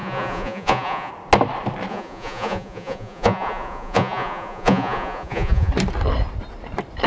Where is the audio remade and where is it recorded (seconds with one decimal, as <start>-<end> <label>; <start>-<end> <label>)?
0.0-1.1 remade; 1.1-1.9 recorded; 1.9-5.7 remade; 5.7-7.1 recorded